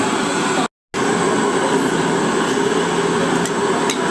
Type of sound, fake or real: real